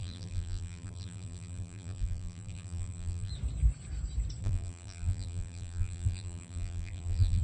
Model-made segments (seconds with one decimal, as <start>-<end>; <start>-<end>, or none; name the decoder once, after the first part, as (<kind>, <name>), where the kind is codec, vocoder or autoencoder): 0.0-3.3 (vocoder, BigVGAN v2); 4.4-7.4